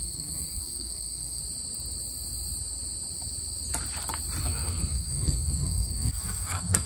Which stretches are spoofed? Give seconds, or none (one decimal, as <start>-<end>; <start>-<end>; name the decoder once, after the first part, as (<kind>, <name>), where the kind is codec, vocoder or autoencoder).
0.0-1.4 (codec, SNAC); 4.4-6.9

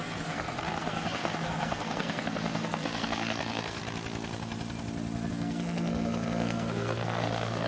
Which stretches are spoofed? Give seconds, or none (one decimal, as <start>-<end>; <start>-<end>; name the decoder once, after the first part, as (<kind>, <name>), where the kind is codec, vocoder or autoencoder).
0.0-3.8 (codec, SNAC); 5.3-7.7

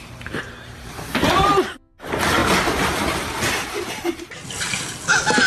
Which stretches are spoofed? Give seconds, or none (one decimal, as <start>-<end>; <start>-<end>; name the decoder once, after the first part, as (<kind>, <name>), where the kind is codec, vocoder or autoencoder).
2.4-4.3 (vocoder, BigVGAN v2)

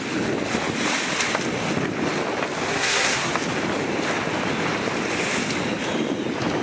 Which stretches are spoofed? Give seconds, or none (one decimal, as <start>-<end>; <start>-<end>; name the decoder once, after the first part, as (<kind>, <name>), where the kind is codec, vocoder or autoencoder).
2.7-3.3 (codec, SNAC)

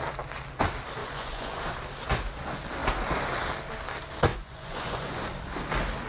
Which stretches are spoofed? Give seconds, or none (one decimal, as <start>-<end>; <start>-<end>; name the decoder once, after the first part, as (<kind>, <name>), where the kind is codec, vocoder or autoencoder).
1.0-1.6 (vocoder, Vocos); 4.3-5.2